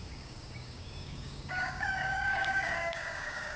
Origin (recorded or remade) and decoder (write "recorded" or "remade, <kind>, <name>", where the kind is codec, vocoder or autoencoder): remade, codec, DAC